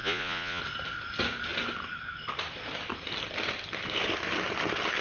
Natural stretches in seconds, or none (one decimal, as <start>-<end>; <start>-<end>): 0.6-5.0